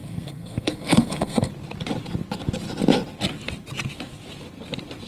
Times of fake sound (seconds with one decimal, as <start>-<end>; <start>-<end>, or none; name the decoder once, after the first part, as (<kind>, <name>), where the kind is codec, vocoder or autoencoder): 0.0-1.5 (codec, SNAC)